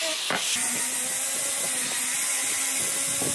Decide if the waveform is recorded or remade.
recorded